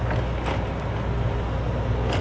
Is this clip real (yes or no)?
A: yes